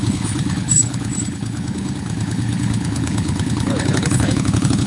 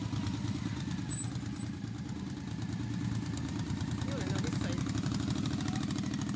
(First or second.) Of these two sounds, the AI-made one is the first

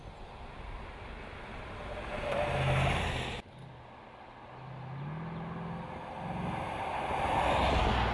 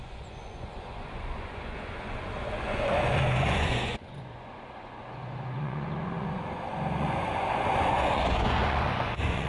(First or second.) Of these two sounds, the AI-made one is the second